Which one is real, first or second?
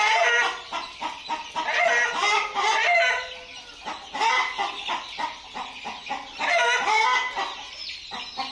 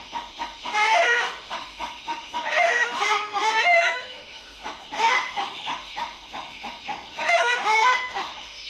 first